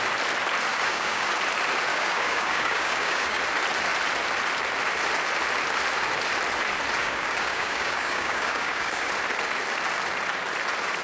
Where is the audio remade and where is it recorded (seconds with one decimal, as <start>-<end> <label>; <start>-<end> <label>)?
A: 0.0-0.7 recorded; 0.7-1.3 remade; 1.3-1.9 recorded; 1.9-3.4 remade; 3.4-7.0 recorded; 7.0-9.1 remade; 9.1-11.0 recorded